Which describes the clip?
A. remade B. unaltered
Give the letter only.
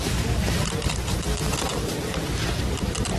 A